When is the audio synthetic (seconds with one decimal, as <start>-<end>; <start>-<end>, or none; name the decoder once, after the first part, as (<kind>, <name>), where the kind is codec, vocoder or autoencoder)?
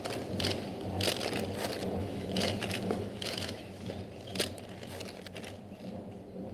2.0-3.9 (autoencoder, DAC-VAE)